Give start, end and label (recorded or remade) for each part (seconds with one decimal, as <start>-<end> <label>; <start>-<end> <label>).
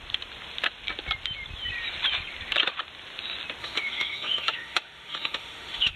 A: 0.0-3.6 recorded; 3.6-6.0 remade